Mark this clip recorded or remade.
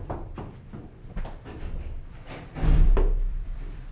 remade